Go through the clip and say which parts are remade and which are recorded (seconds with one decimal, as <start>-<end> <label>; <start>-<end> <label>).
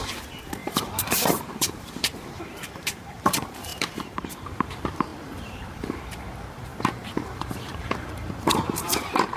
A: 0.0-9.4 remade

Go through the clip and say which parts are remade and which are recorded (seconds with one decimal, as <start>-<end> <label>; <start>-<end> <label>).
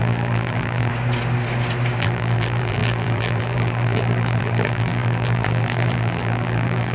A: 0.0-0.9 remade; 0.9-2.0 recorded; 2.0-6.9 remade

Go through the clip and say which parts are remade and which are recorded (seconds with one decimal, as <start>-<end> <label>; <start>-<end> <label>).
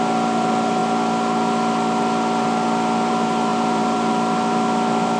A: 0.0-3.5 recorded; 3.5-4.1 remade; 4.1-5.2 recorded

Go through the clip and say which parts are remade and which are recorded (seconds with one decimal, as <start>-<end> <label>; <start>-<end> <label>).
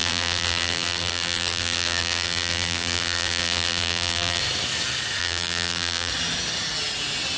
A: 0.0-4.4 remade; 4.4-5.2 recorded; 5.2-6.1 remade; 6.1-7.4 recorded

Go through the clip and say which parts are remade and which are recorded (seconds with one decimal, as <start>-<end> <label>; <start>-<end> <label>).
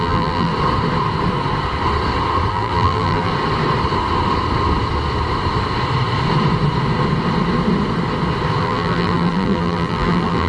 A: 0.0-0.5 remade; 0.5-2.5 recorded; 2.5-3.3 remade; 3.3-8.6 recorded; 8.6-10.5 remade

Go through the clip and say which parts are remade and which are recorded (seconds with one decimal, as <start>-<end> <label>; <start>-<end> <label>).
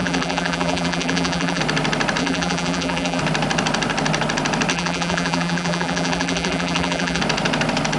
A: 0.0-1.6 remade; 1.6-2.2 recorded; 2.2-3.2 remade; 3.2-4.7 recorded; 4.7-7.2 remade; 7.2-8.0 recorded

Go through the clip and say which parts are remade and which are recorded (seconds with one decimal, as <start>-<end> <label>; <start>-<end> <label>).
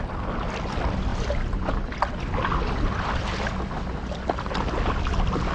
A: 0.0-5.5 recorded